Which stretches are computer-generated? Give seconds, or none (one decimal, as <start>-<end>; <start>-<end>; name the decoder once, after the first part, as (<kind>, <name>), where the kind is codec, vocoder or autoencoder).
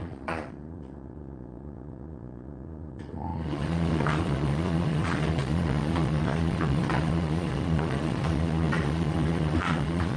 0.0-10.2 (vocoder, Vocos)